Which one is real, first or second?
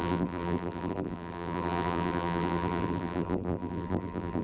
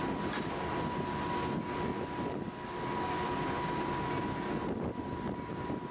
second